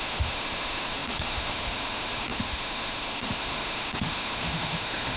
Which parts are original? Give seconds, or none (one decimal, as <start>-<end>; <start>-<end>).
none